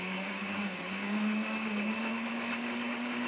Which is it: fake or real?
fake